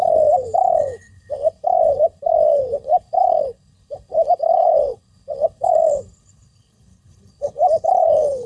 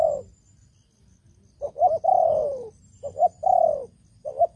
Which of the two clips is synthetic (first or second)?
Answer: first